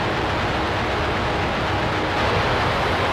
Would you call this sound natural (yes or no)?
yes